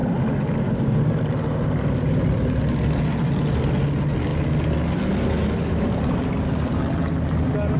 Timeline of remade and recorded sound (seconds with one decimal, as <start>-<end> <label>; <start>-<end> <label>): 0.0-7.8 recorded